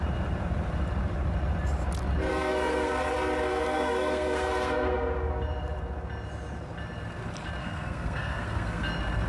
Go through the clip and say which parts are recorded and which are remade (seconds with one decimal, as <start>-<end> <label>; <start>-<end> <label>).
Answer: 0.0-2.3 recorded; 2.3-2.9 remade; 2.9-3.5 recorded; 3.5-5.3 remade; 5.3-7.6 recorded; 7.6-8.9 remade; 8.9-9.3 recorded